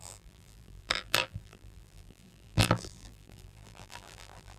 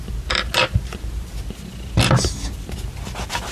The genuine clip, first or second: second